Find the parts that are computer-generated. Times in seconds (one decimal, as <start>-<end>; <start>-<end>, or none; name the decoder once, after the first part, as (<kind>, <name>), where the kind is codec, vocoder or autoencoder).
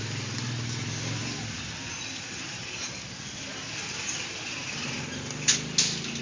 none